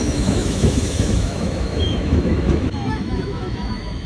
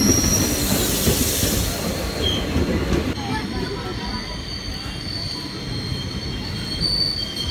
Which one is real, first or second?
second